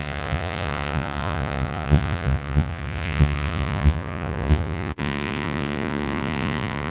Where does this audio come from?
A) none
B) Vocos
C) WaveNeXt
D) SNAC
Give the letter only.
B